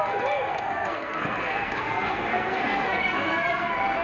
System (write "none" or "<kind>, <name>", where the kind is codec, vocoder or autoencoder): codec, SNAC